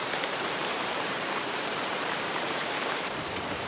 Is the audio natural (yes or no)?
no